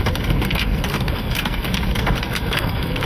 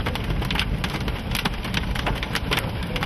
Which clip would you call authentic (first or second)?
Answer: second